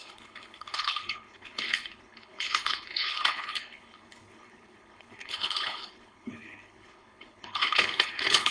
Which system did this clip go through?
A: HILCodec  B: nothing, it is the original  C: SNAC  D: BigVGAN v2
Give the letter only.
A